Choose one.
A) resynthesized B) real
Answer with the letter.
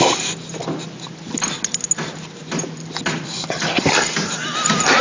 B